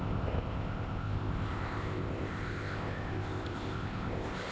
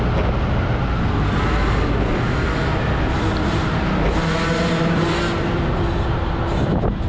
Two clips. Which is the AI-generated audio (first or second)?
first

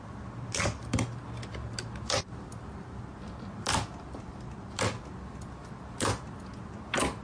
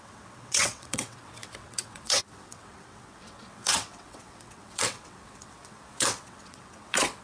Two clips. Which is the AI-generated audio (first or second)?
second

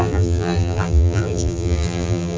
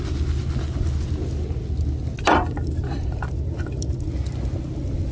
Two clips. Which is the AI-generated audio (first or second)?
first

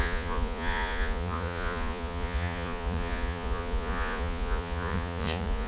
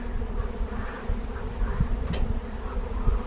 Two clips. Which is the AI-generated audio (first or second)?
first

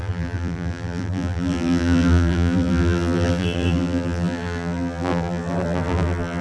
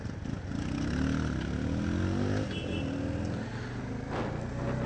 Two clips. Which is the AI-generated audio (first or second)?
first